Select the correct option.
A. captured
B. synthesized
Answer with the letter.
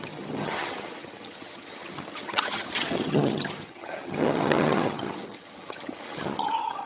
B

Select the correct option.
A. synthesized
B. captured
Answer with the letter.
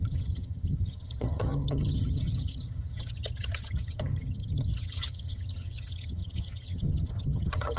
A